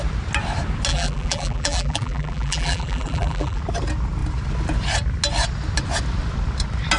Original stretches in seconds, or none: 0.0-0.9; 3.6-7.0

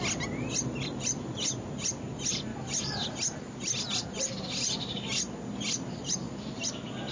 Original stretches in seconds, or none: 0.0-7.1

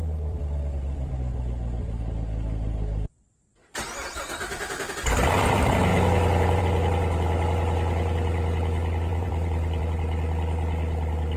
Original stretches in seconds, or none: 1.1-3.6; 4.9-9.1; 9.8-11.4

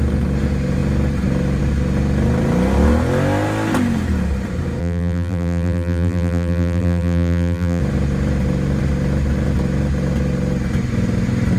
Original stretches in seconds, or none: 0.0-4.8; 7.8-11.6